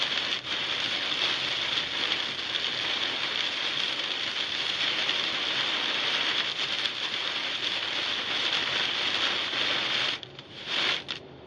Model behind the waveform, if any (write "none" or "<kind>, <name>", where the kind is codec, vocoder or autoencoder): none